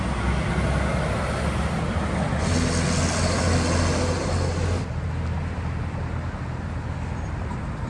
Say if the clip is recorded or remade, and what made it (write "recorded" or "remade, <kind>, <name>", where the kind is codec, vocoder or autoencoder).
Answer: recorded